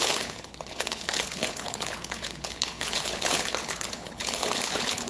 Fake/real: fake